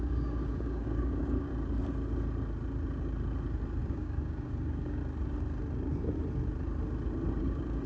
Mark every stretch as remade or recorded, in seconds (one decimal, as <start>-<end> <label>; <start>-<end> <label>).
0.0-1.5 remade; 1.5-3.8 recorded; 3.8-5.0 remade; 5.0-7.4 recorded; 7.4-7.9 remade